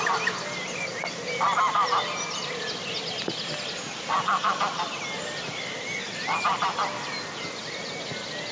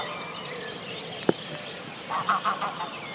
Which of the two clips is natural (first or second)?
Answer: first